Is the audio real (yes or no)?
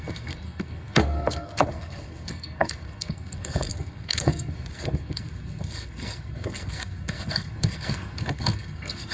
no